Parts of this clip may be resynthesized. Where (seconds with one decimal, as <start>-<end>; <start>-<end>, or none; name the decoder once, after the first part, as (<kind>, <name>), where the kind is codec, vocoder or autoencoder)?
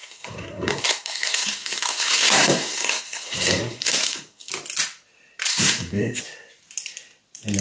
0.0-4.5 (codec, SNAC); 5.5-6.2